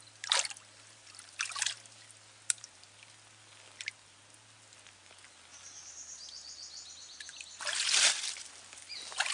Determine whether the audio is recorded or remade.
recorded